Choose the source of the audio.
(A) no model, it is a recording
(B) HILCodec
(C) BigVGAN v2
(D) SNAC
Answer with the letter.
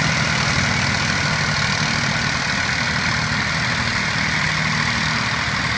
A